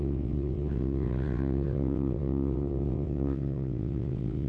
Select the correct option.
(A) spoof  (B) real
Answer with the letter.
A